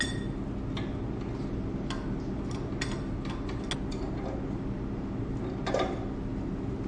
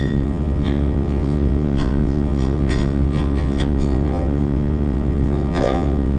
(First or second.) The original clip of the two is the first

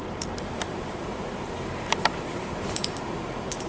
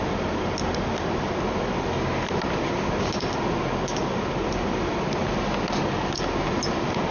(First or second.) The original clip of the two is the second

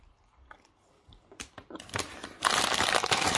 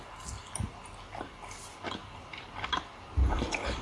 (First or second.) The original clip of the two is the second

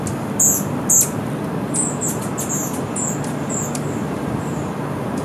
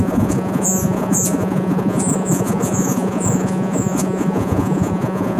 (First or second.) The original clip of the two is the first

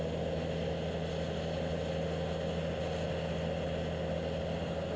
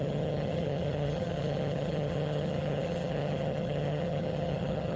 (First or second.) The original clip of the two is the first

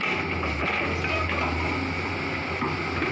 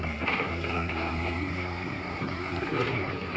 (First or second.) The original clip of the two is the first